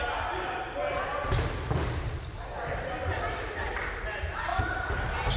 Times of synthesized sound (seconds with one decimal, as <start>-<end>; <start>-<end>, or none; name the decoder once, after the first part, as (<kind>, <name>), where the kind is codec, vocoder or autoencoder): none